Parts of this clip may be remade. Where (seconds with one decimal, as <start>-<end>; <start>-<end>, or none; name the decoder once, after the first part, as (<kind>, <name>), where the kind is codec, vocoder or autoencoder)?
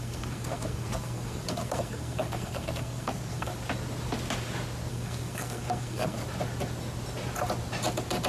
0.0-3.5 (codec, SNAC); 4.9-6.2